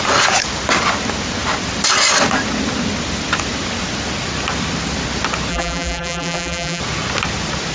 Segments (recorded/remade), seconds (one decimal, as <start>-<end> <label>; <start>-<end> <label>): 0.0-5.5 recorded; 5.5-6.8 remade; 6.8-7.7 recorded